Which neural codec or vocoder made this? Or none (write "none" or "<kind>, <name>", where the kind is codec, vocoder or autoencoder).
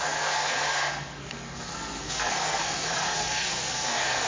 codec, SNAC